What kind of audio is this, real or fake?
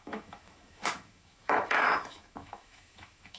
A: fake